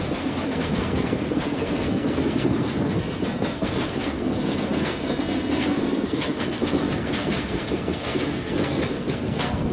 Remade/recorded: remade